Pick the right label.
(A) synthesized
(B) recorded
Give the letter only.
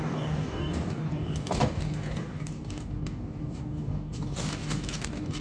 A